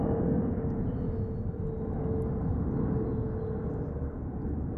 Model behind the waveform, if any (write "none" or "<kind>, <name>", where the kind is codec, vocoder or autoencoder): none